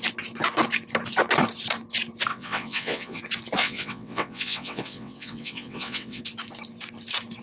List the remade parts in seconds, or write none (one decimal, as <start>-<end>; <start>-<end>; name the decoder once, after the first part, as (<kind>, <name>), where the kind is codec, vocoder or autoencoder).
2.3-3.2 (vocoder, WaveNeXt); 3.6-6.2